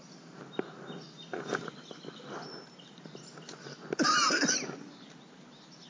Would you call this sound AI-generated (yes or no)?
no